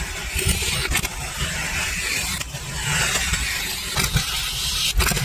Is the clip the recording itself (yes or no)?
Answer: yes